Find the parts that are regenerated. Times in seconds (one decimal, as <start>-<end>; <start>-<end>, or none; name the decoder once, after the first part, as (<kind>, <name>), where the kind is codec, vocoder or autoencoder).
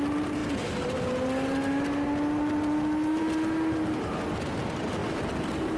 none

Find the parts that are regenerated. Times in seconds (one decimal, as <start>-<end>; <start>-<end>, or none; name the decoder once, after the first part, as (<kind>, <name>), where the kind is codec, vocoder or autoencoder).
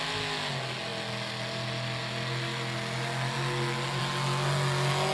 none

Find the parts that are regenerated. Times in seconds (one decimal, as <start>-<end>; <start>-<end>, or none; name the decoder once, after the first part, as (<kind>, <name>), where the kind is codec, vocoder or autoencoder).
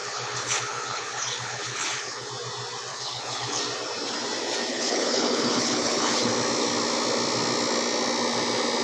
0.0-2.3 (codec, HILCodec); 2.9-3.6; 4.7-6.3